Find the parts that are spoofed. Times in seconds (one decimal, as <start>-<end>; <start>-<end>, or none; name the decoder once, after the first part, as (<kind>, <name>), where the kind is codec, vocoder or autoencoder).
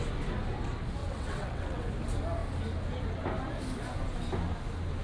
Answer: 1.0-1.9 (vocoder, WaveNeXt)